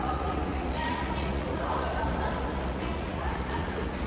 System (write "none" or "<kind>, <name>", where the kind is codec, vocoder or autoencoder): vocoder, Vocos